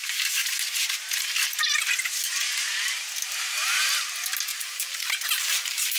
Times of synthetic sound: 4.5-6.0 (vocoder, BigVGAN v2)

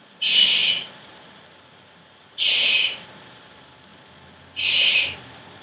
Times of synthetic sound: 0.0-3.9 (vocoder, BigVGAN v2); 4.7-5.6

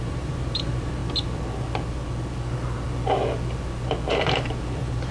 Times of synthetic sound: 0.0-1.0 (vocoder, BigVGAN v2); 4.1-5.1

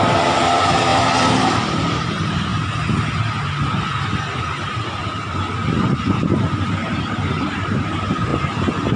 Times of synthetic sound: 0.0-2.5 (vocoder, BigVGAN v2); 4.4-5.0; 6.4-8.3